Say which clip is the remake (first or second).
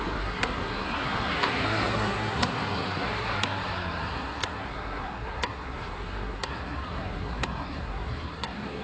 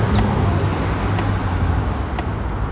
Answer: first